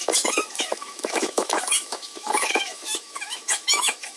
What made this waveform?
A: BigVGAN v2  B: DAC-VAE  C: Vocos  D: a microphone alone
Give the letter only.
B